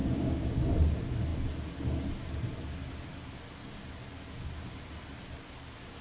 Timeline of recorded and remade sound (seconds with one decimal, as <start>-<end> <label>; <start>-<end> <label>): 0.0-0.6 remade; 0.6-6.0 recorded